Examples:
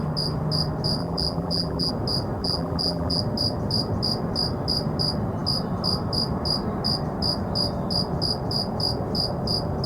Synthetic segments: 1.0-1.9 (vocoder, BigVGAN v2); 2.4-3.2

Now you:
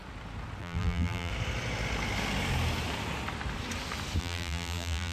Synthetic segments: 0.6-1.3 (vocoder, BigVGAN v2); 4.2-5.1

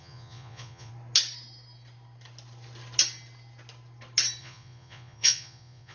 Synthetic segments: 0.0-0.9 (vocoder, Vocos); 4.4-5.9

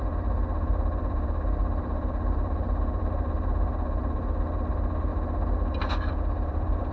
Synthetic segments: 0.0-5.1 (vocoder, BigVGAN v2); 6.1-6.9

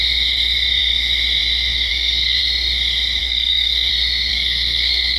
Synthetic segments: 1.9-2.4 (codec, SNAC); 3.2-3.9; 4.3-5.2

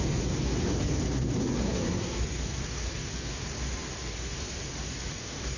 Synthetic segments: 1.4-2.2 (codec, SNAC)

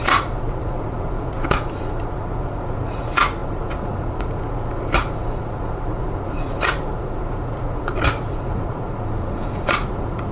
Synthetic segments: 0.0-10.3 (vocoder, Vocos)

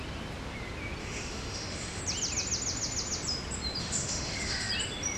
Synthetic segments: 1.0-2.0 (autoencoder, DAC-VAE); 3.8-4.7